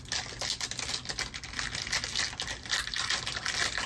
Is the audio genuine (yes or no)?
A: yes